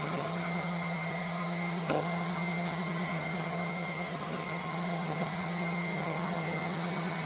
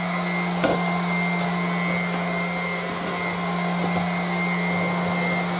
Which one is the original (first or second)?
second